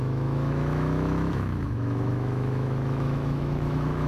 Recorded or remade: remade